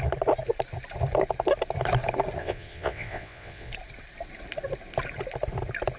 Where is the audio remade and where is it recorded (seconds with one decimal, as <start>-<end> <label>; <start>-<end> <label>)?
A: 0.0-2.4 recorded; 2.4-3.7 remade; 3.7-6.0 recorded